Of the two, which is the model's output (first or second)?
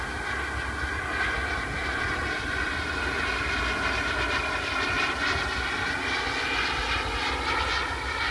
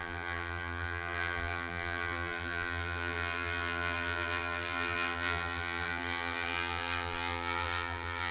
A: second